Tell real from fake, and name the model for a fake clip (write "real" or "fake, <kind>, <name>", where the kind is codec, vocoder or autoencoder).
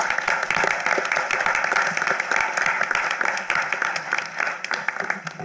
fake, vocoder, BigVGAN v2